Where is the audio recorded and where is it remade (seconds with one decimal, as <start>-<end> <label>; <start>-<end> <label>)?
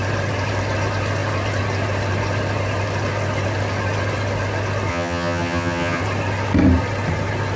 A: 0.0-4.9 recorded; 4.9-6.0 remade; 6.0-7.6 recorded